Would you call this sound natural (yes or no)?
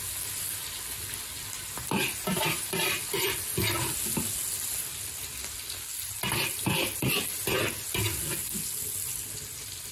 yes